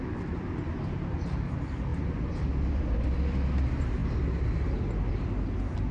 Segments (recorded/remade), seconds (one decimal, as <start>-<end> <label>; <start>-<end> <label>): 0.0-5.9 recorded